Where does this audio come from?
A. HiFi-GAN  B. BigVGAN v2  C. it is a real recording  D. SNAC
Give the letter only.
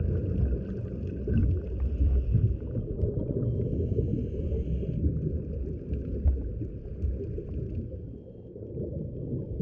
C